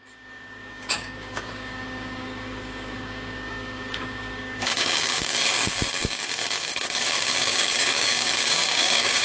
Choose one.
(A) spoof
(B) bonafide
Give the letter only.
A